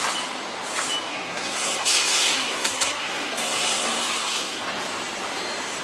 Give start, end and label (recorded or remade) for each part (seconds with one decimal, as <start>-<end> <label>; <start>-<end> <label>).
0.0-1.1 recorded; 1.1-4.6 remade; 4.6-5.8 recorded